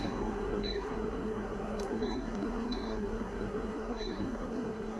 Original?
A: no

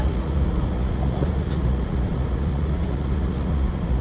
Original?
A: no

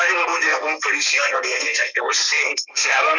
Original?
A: no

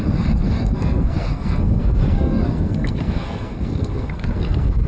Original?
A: no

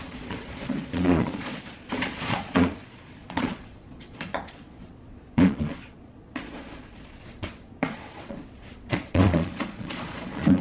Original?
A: no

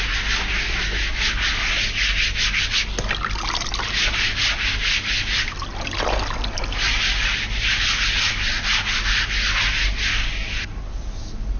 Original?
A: yes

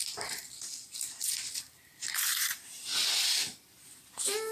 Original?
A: no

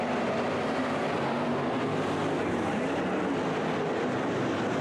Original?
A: yes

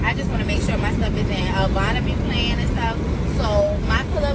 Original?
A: yes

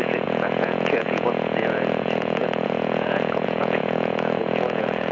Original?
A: no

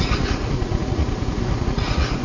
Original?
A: no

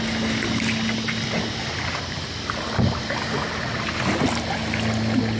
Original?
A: yes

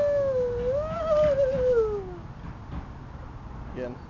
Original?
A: yes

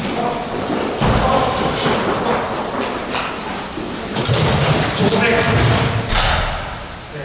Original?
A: yes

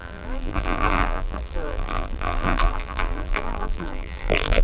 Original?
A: no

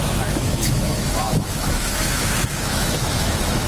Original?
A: no